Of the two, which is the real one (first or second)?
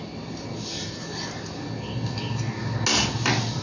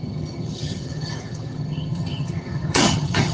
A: first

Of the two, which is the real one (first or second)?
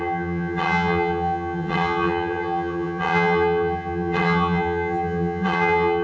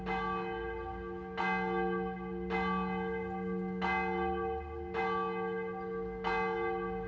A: second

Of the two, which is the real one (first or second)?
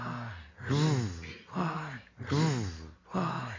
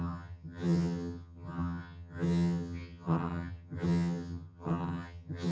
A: first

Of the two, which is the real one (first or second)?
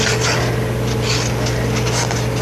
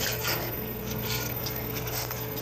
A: first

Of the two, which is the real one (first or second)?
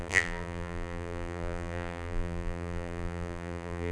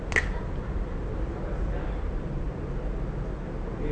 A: second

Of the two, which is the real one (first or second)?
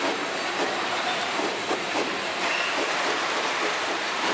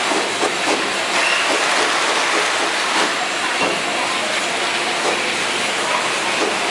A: second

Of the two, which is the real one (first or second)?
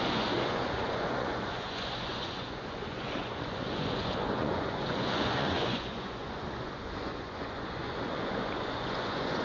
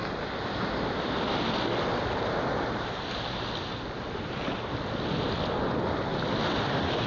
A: second